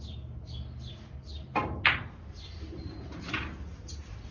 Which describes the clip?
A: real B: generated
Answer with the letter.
A